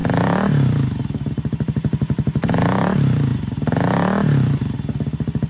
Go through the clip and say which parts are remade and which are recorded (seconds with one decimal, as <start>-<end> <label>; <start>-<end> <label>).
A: 0.0-5.5 recorded